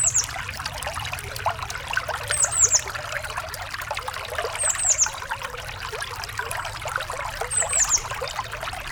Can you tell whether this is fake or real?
real